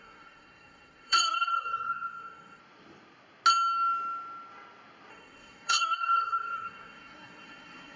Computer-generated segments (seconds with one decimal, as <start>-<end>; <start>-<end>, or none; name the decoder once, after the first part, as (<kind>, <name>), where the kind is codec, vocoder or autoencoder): 0.0-2.6 (codec, SNAC); 5.1-8.0